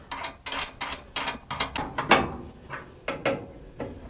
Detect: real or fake real